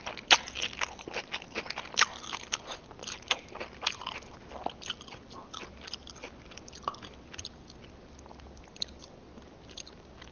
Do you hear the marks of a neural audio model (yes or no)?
no